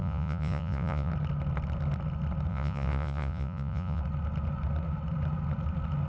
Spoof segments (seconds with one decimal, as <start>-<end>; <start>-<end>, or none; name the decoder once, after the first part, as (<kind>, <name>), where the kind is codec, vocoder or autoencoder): 0.0-1.1 (vocoder, Vocos); 2.5-4.0